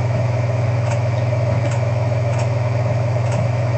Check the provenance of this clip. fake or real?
fake